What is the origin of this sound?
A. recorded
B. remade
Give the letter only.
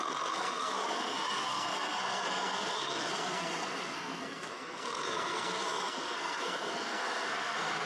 B